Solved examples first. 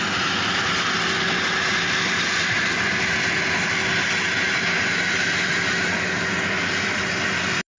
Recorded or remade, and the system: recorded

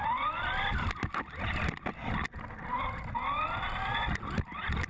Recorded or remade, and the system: recorded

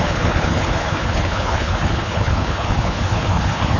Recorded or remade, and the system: remade, codec, HILCodec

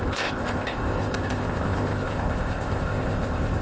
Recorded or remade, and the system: remade, codec, ZipCodec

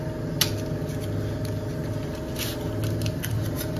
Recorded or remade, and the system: recorded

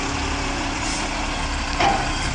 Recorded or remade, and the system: recorded